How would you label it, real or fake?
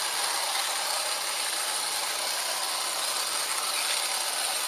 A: real